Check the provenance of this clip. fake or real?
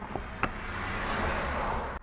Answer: real